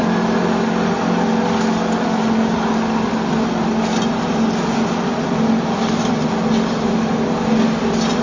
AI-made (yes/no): no